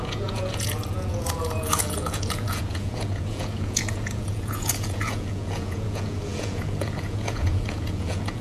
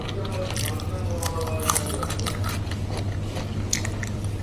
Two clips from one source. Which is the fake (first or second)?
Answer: first